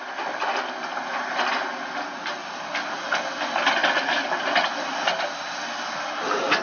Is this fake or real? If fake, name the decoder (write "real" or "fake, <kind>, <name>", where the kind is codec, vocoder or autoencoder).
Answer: real